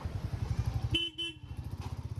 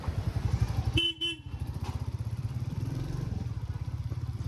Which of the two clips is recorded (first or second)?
first